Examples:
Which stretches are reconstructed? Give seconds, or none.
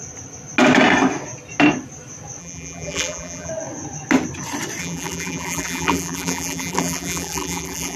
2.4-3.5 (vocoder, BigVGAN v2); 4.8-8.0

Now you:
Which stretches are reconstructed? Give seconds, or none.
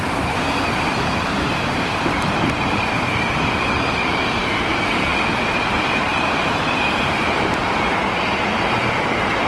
0.0-9.5 (vocoder, BigVGAN v2)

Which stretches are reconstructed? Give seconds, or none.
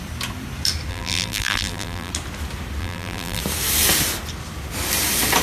0.9-2.1 (vocoder, BigVGAN v2); 2.8-3.4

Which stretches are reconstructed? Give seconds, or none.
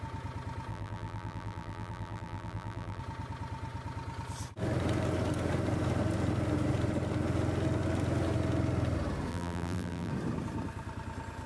0.7-3.0 (vocoder, BigVGAN v2); 9.3-10.1